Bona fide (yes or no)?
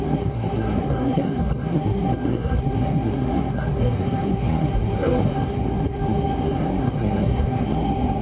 no